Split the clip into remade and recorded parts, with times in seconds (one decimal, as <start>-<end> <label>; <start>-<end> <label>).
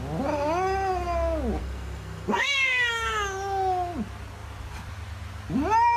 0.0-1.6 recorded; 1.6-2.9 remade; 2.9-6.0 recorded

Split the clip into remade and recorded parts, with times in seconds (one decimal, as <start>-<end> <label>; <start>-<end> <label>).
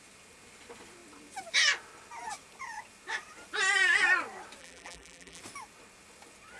0.0-4.6 recorded; 4.6-5.4 remade; 5.4-6.6 recorded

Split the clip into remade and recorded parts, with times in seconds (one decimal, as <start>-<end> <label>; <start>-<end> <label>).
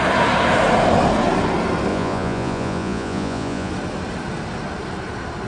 0.0-1.9 recorded; 1.9-3.7 remade; 3.7-5.5 recorded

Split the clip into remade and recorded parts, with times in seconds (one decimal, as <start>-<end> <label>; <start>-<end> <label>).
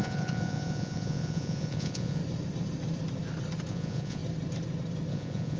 0.0-2.2 remade; 2.2-3.7 recorded; 3.7-4.2 remade; 4.2-5.1 recorded; 5.1-5.6 remade